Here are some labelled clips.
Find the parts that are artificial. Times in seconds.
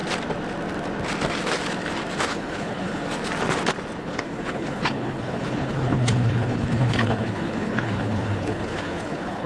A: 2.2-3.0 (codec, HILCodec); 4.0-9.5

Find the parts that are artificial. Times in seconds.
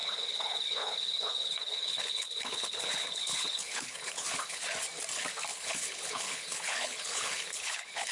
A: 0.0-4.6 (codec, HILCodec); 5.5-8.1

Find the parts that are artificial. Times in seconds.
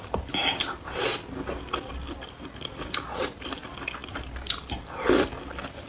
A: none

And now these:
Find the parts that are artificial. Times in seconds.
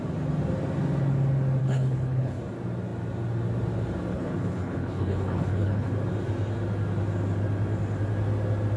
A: 1.6-2.4 (codec, HILCodec); 4.1-5.9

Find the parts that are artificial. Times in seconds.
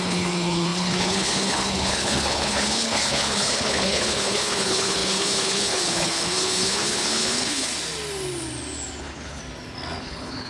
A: 0.0-7.7 (codec, HILCodec); 9.0-9.4; 10.0-10.5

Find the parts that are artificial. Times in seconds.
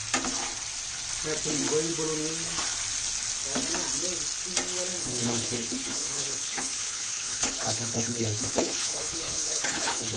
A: 5.0-10.2 (codec, HILCodec)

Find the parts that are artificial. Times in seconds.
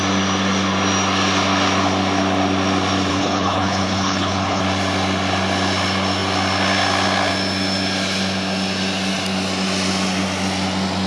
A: 3.1-4.6 (codec, HILCodec)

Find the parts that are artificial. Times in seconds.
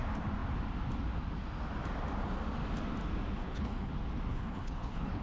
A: 3.4-3.9 (codec, HILCodec); 4.3-5.2